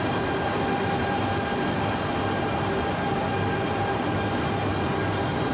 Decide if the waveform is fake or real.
real